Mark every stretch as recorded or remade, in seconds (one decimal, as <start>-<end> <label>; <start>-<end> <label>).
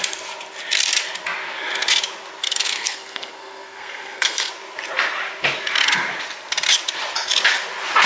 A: 0.0-2.4 recorded; 2.4-4.5 remade; 4.5-8.1 recorded